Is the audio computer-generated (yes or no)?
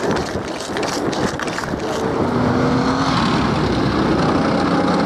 no